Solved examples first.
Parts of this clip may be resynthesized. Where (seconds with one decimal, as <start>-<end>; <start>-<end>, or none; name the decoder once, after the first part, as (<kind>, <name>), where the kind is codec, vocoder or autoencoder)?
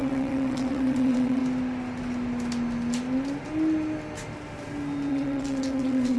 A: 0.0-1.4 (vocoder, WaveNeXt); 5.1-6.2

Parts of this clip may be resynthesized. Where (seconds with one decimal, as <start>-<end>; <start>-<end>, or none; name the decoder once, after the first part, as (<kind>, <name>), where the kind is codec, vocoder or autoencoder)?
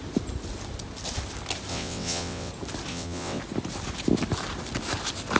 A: 1.7-2.5 (vocoder, WaveNeXt); 2.9-3.4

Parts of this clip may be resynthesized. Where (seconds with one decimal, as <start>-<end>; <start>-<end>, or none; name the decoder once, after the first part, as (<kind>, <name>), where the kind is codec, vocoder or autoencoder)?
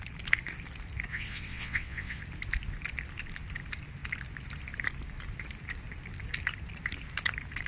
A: 1.1-2.2 (vocoder, WaveNeXt)